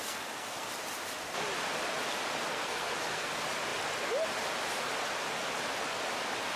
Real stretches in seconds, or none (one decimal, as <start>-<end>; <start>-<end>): 0.7-2.5; 3.3-6.6